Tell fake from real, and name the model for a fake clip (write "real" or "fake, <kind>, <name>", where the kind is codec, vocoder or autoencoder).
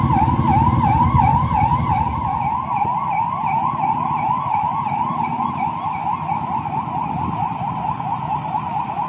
real